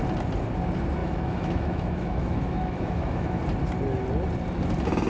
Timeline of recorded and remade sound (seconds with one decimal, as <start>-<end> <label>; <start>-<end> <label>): 0.0-1.0 recorded; 1.0-3.4 remade; 3.4-5.1 recorded